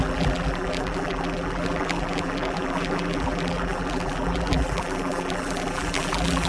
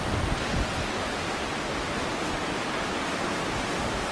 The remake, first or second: first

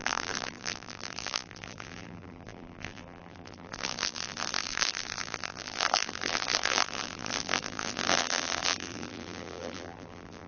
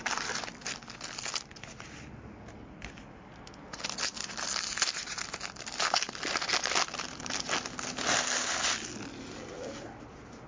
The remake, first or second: first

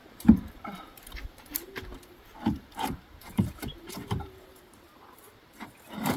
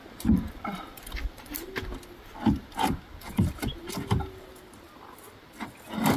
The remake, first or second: first